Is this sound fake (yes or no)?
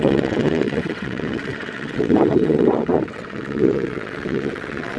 yes